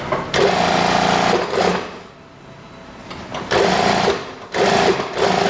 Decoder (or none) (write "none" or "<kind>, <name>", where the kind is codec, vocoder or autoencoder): none